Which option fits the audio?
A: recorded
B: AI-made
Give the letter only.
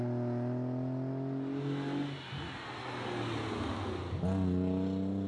A